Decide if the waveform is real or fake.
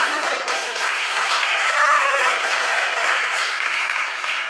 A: fake